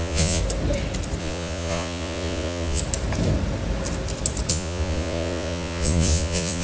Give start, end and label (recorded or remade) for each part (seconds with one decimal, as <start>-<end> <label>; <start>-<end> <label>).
0.0-0.4 remade; 0.4-1.2 recorded; 1.2-2.8 remade; 2.8-4.5 recorded; 4.5-6.6 remade